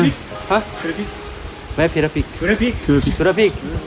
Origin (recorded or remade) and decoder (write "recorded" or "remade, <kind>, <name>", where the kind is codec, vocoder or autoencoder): recorded